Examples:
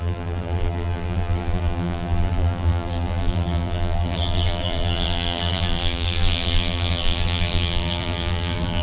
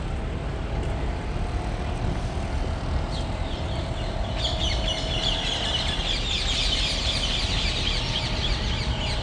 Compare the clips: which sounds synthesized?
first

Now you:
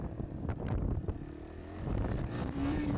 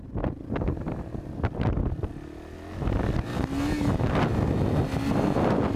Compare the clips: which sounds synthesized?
first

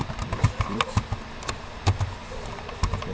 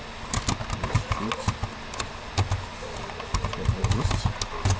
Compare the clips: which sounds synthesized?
first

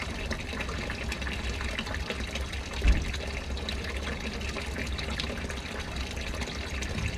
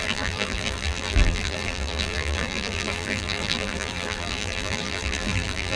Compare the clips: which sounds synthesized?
second